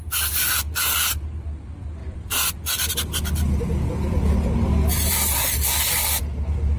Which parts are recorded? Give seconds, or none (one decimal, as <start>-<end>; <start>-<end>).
0.0-2.0; 2.9-5.0; 5.7-6.8